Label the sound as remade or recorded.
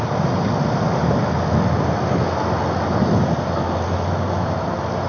recorded